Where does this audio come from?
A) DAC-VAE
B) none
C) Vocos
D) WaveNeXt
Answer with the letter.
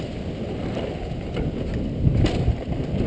B